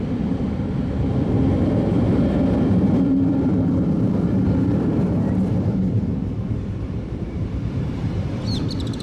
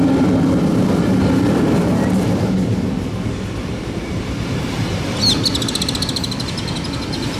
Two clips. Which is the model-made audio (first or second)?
first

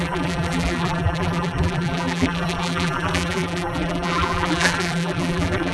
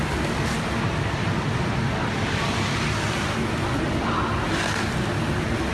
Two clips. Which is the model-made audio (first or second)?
first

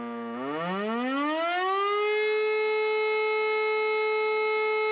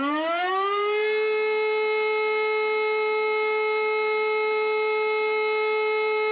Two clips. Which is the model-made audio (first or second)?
second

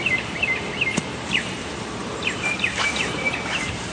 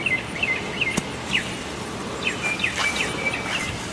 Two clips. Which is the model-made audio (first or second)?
first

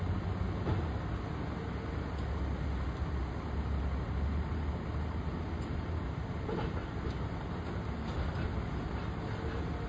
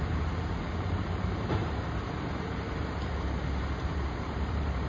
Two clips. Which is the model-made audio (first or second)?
second